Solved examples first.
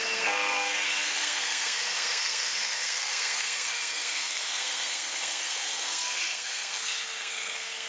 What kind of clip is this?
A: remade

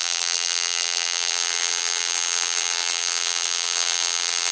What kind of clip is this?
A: remade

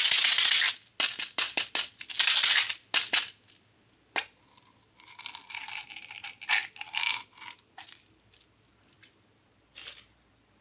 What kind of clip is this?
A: recorded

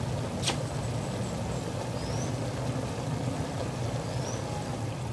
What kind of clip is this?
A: recorded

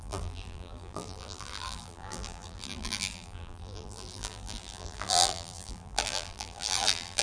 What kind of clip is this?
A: remade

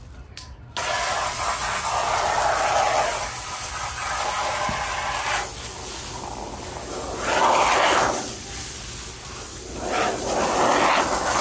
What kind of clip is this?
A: recorded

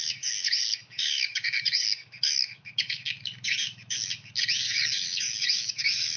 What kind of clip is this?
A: remade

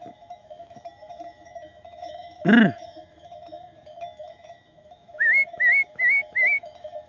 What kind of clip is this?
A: remade